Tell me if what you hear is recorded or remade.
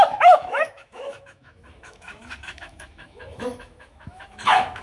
remade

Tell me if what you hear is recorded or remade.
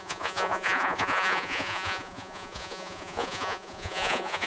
remade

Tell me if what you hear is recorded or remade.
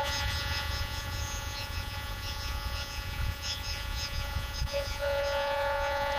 remade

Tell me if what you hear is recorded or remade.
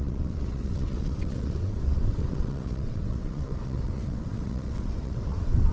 remade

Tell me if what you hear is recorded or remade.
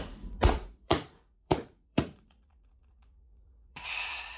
remade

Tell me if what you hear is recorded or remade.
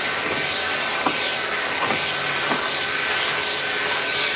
recorded